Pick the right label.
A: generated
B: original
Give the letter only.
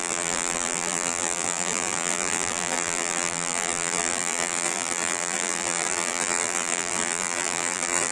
A